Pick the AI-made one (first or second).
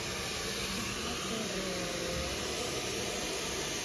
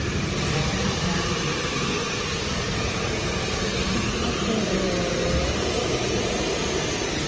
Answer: second